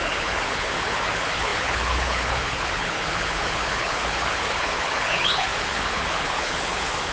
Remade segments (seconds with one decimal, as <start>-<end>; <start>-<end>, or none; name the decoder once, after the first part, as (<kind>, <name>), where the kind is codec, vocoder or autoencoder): 0.0-7.1 (codec, HILCodec)